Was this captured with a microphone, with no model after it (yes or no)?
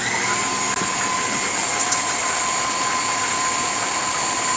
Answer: yes